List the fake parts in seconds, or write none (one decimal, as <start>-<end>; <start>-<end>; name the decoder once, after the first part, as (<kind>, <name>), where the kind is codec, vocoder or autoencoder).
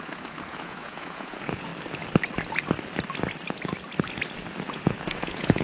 0.0-1.7 (vocoder, Vocos); 4.7-5.6